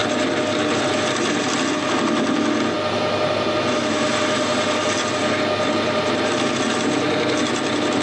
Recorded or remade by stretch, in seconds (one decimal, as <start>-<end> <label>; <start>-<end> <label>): 0.0-8.0 recorded